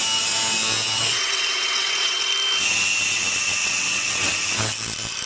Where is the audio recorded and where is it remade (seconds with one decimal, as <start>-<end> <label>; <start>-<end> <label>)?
0.0-1.1 recorded; 1.1-2.3 remade; 2.3-3.6 recorded; 3.6-4.3 remade; 4.3-5.3 recorded